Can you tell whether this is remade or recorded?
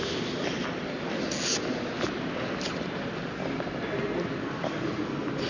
recorded